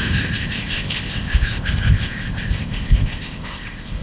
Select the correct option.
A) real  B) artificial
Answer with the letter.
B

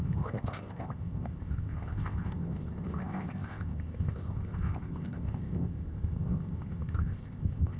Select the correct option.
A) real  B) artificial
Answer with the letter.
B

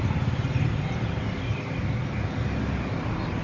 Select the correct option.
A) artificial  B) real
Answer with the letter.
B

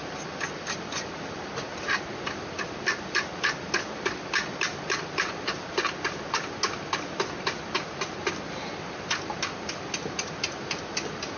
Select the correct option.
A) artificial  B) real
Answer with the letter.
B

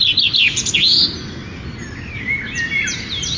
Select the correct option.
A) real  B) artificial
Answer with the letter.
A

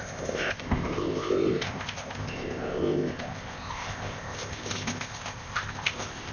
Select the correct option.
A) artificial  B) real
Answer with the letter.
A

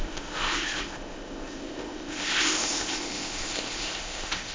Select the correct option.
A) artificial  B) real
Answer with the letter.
A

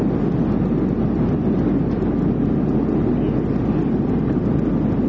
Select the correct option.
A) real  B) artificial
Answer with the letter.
A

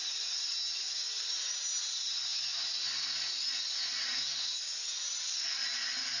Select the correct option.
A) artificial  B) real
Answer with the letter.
B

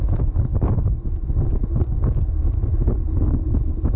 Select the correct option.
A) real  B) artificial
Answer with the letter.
A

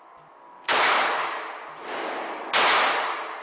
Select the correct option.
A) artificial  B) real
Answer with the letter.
B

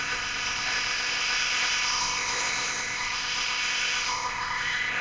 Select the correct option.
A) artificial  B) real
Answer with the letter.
A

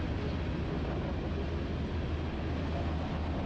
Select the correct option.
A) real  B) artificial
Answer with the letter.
A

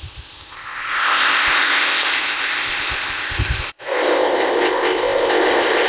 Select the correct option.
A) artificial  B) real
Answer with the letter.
A